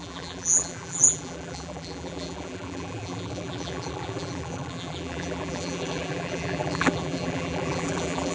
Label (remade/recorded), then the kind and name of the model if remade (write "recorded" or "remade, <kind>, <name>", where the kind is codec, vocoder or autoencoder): remade, vocoder, BigVGAN v2